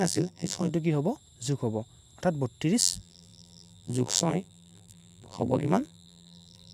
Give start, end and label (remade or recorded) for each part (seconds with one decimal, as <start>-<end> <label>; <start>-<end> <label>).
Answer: 0.0-0.7 remade; 0.7-2.8 recorded; 2.8-6.7 remade